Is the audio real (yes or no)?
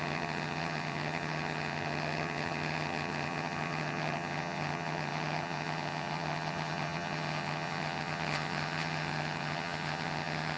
no